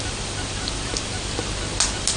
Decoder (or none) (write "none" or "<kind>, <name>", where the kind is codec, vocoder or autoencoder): none